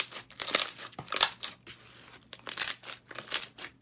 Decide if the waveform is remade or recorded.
recorded